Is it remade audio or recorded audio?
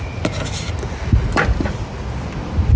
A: recorded